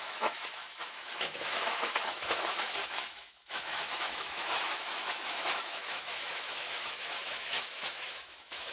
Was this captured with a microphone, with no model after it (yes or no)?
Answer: no